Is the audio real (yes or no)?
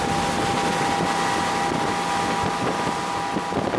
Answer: yes